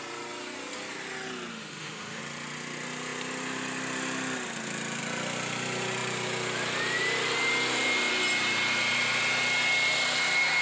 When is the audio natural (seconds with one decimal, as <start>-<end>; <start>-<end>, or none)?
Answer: 0.0-1.5; 2.2-10.6